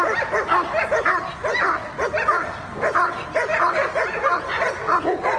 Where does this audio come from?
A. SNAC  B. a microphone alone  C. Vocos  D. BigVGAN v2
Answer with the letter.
D